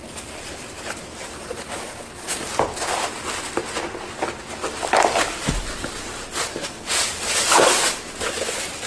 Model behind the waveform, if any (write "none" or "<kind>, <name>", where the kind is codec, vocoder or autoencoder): none